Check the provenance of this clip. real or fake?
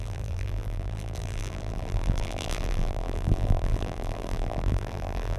fake